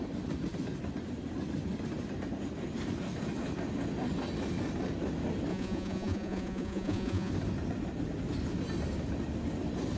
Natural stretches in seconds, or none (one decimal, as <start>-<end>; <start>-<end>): 0.0-5.5; 7.3-10.0

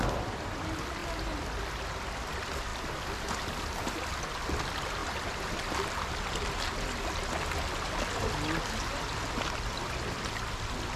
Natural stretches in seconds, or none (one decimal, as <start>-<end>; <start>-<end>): 0.0-1.0; 1.6-11.0

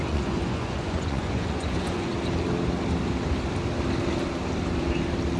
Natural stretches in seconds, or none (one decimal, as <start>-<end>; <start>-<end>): 2.1-5.4

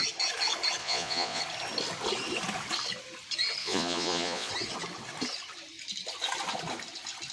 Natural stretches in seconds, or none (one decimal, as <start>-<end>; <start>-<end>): 0.0-0.8; 1.4-3.6; 4.5-7.3

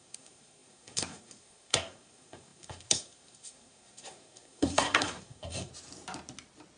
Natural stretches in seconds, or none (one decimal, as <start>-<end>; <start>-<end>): 5.7-6.8

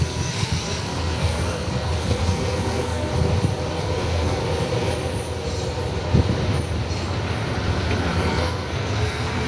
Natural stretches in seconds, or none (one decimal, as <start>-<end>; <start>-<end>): 3.1-3.8; 4.4-8.0